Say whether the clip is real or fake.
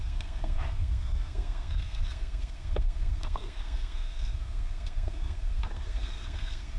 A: fake